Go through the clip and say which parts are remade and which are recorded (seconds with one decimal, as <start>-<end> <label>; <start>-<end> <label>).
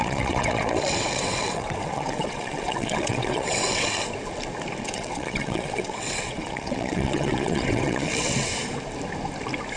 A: 0.0-4.0 remade; 4.0-4.8 recorded; 4.8-8.5 remade; 8.5-9.8 recorded